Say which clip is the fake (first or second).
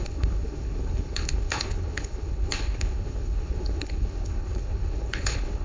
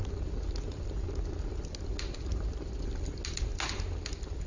first